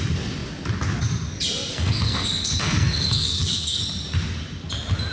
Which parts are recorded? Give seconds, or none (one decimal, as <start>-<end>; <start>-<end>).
0.0-1.7; 3.8-5.1